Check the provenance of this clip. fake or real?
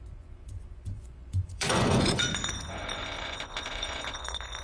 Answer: fake